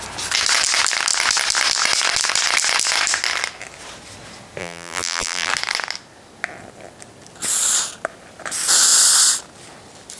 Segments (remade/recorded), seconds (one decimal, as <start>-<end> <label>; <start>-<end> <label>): 0.0-4.6 recorded; 4.6-5.5 remade; 5.5-10.2 recorded